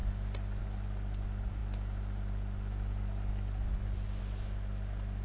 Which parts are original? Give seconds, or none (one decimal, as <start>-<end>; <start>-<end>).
0.0-5.2

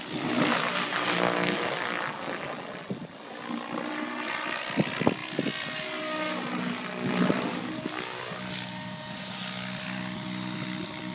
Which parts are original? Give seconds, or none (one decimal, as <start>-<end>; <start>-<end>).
0.0-11.1

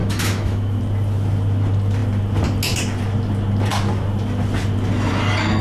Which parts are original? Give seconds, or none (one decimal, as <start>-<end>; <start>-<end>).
0.8-5.6